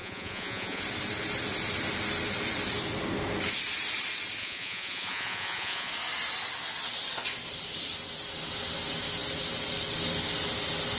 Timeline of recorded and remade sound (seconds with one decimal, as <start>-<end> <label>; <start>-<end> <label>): 0.0-0.8 remade; 0.8-4.4 recorded; 4.4-5.9 remade; 5.9-11.0 recorded